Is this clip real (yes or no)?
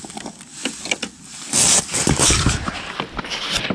yes